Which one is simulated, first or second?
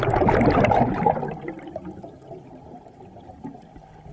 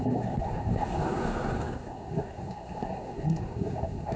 second